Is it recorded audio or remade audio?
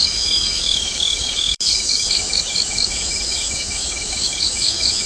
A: remade